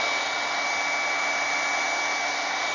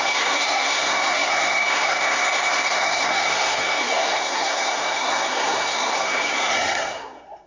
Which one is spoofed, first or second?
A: second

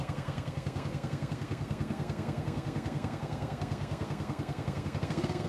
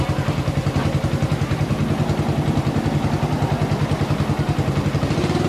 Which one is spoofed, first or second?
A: first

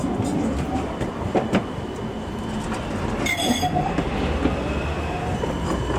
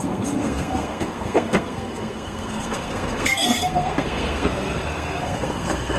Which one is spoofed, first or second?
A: second